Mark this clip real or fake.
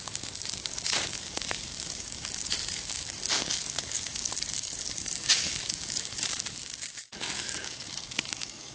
fake